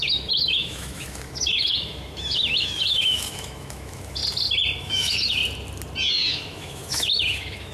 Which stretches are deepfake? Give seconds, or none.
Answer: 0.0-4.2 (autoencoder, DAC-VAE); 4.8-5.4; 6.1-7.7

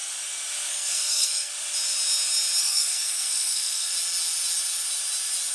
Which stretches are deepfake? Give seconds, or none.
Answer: 0.7-1.5 (codec, SNAC); 2.6-3.9

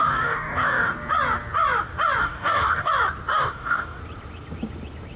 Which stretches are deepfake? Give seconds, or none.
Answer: 0.0-0.9 (codec, DAC); 2.2-2.9; 3.3-4.0

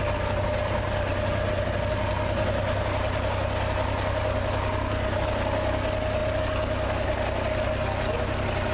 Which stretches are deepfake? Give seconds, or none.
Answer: none

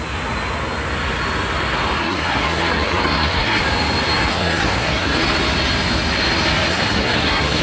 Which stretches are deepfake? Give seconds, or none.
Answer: 2.0-3.6 (codec, SNAC); 4.3-5.2; 6.7-7.6

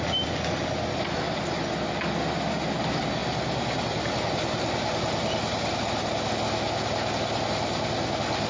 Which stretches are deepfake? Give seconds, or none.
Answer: none